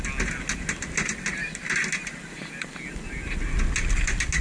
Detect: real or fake real